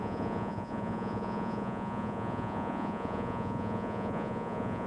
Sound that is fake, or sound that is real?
fake